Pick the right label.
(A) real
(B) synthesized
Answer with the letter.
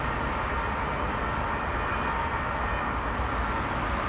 A